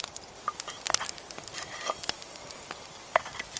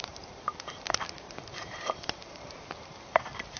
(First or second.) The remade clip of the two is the second